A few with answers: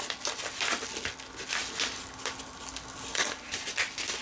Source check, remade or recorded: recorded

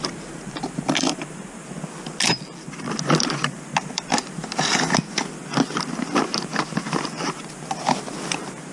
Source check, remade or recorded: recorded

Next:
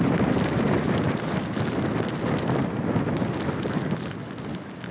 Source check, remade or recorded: recorded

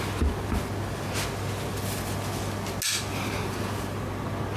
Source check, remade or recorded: recorded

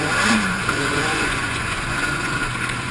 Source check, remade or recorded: remade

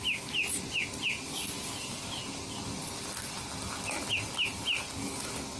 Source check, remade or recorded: recorded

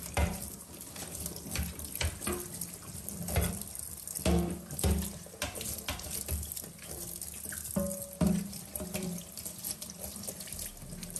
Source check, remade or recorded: recorded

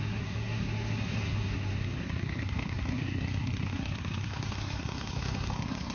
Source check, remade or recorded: remade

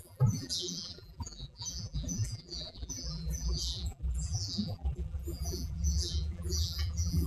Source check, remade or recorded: remade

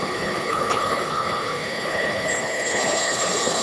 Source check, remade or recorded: remade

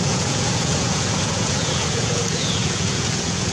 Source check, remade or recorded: remade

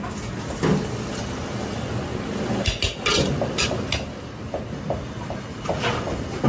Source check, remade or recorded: recorded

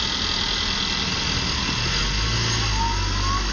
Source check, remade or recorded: recorded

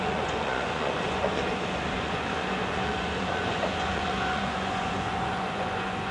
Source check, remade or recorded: remade